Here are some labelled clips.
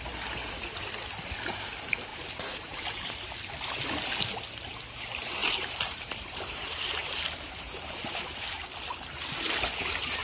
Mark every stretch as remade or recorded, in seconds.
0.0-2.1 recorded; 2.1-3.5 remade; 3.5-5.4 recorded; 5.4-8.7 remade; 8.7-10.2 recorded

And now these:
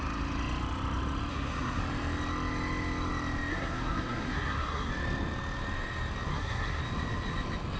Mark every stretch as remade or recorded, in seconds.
0.0-1.3 recorded; 1.3-1.8 remade; 1.8-3.5 recorded; 3.5-4.9 remade; 4.9-6.3 recorded; 6.3-6.8 remade; 6.8-7.8 recorded

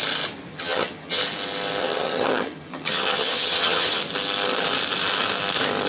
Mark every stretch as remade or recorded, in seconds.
0.0-0.5 recorded; 0.5-1.2 remade; 1.2-1.8 recorded; 1.8-4.0 remade; 4.0-5.9 recorded

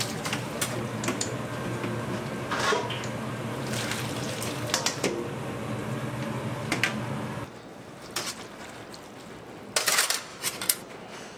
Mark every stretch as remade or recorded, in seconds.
0.0-5.8 recorded; 5.8-6.4 remade; 6.4-10.3 recorded; 10.3-11.0 remade; 11.0-11.4 recorded